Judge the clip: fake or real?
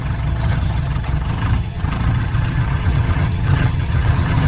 fake